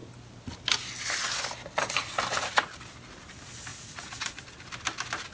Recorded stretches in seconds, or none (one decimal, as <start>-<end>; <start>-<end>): 0.0-3.7; 4.4-5.3